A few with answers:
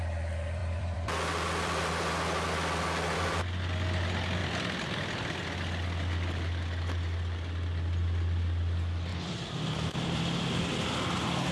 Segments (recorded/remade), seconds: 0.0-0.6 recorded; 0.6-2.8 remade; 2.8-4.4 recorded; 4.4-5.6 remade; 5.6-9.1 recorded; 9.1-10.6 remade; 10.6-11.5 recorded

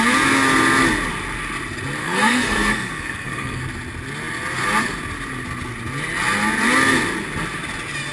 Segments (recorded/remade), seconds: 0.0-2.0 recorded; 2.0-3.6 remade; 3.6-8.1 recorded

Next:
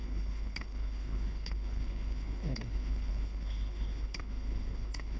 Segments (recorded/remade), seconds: 0.0-5.2 remade

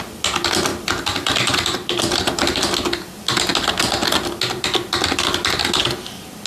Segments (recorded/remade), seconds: 0.0-0.7 recorded; 0.7-2.6 remade; 2.6-6.5 recorded